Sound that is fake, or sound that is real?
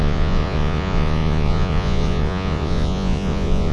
fake